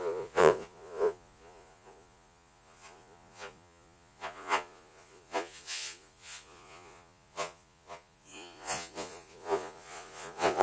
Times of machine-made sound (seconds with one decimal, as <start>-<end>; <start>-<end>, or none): 0.0-10.6